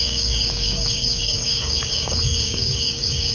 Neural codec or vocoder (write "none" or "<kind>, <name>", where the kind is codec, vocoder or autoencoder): codec, DAC